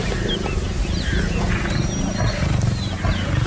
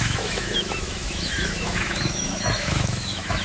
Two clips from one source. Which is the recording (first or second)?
first